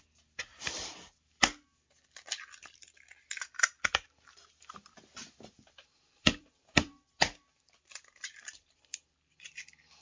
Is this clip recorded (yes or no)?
no